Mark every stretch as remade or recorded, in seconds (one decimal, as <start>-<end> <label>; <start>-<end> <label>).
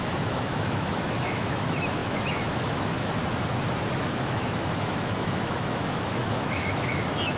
0.0-3.2 remade; 3.2-3.9 recorded; 3.9-7.4 remade